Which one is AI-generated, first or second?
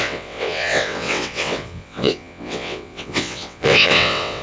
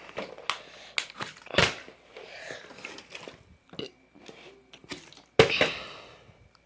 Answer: first